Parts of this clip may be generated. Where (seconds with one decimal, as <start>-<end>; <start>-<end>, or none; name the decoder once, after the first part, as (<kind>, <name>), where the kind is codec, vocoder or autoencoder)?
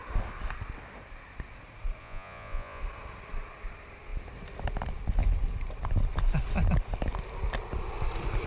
2.0-2.8 (vocoder, Vocos)